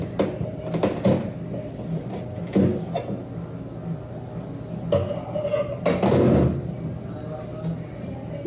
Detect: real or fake real